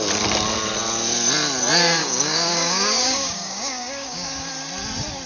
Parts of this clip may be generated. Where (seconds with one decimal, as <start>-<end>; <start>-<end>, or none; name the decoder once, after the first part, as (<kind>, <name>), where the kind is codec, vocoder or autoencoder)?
2.0-4.5 (codec, DAC)